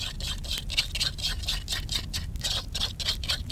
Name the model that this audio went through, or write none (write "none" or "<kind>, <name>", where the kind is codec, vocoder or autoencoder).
none